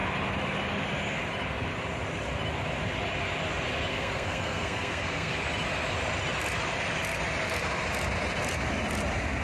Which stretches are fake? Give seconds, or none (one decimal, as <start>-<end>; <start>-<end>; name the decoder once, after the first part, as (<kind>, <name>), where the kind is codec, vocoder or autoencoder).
3.9-5.3 (codec, SNAC)

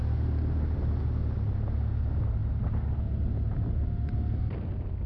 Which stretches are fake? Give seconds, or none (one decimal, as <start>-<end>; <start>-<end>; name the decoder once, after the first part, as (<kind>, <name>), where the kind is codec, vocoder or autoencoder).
none